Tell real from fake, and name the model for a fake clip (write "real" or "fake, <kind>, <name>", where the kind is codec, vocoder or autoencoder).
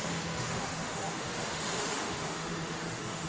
fake, autoencoder, DAC-VAE